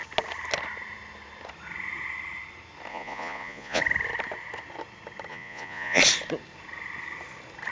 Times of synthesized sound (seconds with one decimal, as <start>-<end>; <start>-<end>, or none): 2.9-3.8; 5.3-6.0